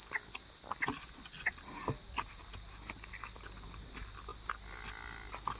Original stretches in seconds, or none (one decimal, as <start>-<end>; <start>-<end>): 0.0-5.6